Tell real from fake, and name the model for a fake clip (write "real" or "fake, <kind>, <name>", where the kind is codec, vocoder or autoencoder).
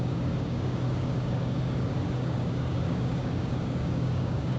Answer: fake, codec, DAC